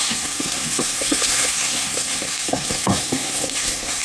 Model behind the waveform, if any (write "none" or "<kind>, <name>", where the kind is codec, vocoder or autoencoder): codec, SNAC